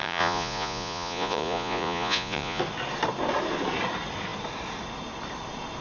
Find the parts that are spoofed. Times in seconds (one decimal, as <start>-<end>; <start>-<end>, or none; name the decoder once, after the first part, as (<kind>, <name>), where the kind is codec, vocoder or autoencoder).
0.0-2.6 (vocoder, Vocos)